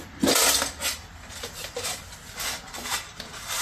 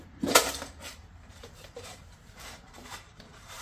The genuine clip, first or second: first